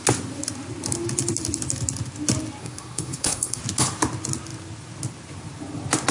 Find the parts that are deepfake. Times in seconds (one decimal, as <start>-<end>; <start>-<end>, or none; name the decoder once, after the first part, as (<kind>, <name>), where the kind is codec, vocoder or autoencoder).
2.6-3.6 (codec, SNAC)